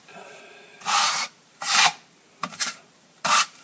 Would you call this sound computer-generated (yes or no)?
yes